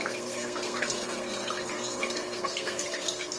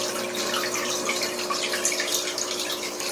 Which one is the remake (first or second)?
first